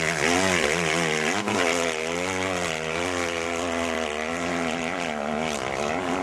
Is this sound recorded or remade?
recorded